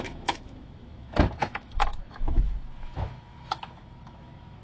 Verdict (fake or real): fake